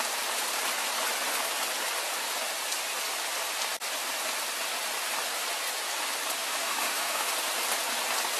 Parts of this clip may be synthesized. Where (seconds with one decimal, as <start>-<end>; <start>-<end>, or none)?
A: 6.4-7.3